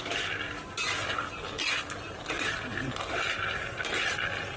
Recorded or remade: recorded